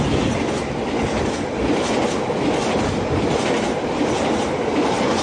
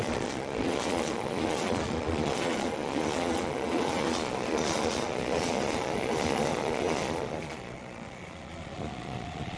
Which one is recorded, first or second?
first